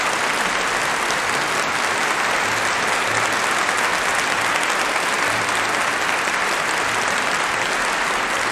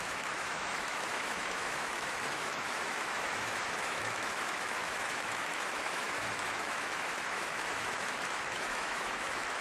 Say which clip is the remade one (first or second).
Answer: second